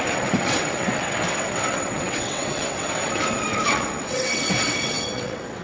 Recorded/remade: remade